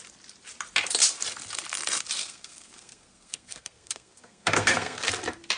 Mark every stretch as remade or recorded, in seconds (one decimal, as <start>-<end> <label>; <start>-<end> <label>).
0.0-2.2 recorded; 2.2-5.1 remade; 5.1-5.6 recorded